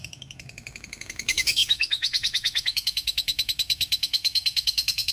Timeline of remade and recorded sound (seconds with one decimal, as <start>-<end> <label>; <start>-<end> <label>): 0.0-5.1 remade